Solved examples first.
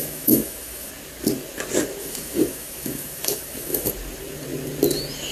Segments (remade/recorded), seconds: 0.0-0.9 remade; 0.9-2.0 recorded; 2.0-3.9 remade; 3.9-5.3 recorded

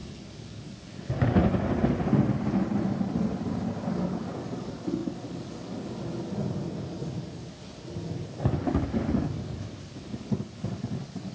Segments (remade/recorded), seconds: 0.0-1.4 remade; 1.4-3.9 recorded; 3.9-11.3 remade

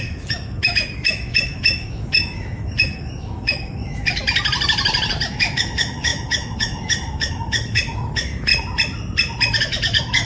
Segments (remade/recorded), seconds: 0.0-4.2 remade; 4.2-5.3 recorded; 5.3-8.5 remade; 8.5-9.6 recorded; 9.6-10.3 remade

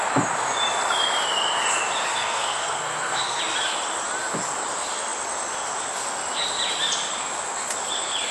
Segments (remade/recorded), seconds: 0.0-2.1 recorded; 2.1-3.4 remade; 3.4-8.3 recorded

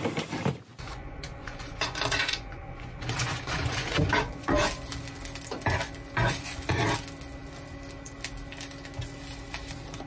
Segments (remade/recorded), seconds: 0.0-0.7 recorded; 0.7-4.7 remade; 4.7-6.2 recorded; 6.2-6.8 remade; 6.8-10.1 recorded

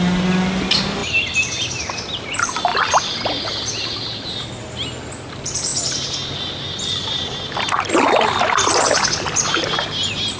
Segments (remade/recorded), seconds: 0.0-10.4 recorded